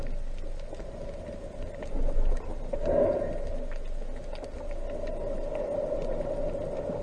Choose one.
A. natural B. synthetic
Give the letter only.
A